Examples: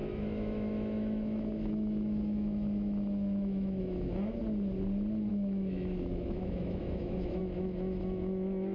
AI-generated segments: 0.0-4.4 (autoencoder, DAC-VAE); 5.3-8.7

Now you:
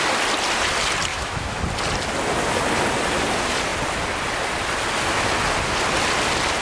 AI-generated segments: 1.1-1.6 (autoencoder, DAC-VAE)

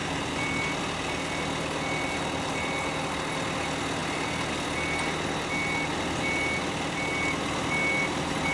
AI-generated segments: none

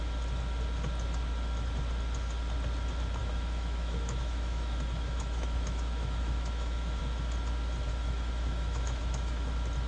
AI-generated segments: 3.2-7.0 (autoencoder, DAC-VAE); 7.9-9.5

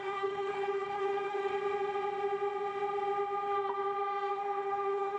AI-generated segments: 0.0-1.5 (autoencoder, DAC-VAE); 4.3-5.2

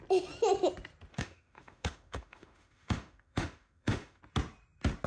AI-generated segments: 1.1-4.2 (autoencoder, DAC-VAE)

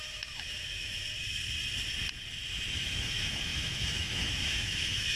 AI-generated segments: 0.0-1.0 (autoencoder, DAC-VAE); 2.7-5.2

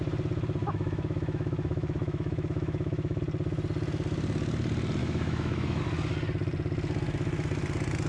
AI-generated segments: 0.6-3.2 (autoencoder, DAC-VAE); 5.0-5.8